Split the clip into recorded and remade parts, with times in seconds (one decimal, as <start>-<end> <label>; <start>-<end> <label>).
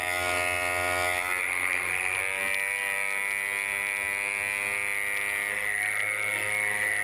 0.0-1.4 recorded; 1.4-2.2 remade; 2.2-5.5 recorded; 5.5-7.0 remade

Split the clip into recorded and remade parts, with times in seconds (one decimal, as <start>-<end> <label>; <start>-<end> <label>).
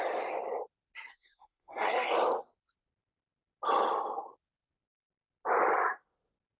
0.0-1.1 recorded; 1.1-2.1 remade; 2.1-6.6 recorded